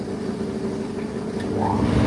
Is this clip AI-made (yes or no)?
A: no